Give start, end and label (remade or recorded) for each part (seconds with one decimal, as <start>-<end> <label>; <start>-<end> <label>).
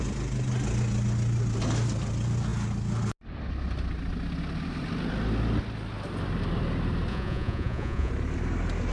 0.0-7.1 recorded; 7.1-8.1 remade; 8.1-8.9 recorded